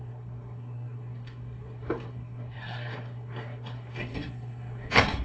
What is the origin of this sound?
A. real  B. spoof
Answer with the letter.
B